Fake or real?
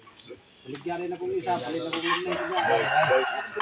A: real